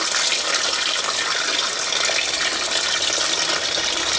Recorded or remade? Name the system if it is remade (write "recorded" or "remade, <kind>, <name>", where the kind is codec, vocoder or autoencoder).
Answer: recorded